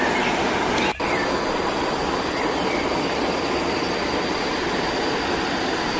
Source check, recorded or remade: recorded